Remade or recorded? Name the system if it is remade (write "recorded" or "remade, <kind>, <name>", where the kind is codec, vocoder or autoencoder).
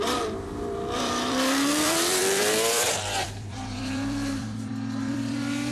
remade, vocoder, BigVGAN v2